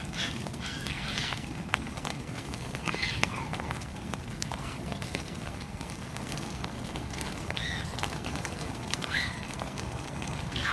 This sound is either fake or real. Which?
fake